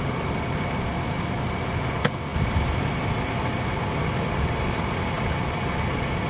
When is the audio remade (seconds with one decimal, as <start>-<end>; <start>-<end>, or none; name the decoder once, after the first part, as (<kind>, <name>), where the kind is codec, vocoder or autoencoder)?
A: 0.9-1.5 (vocoder, BigVGAN v2); 2.3-6.3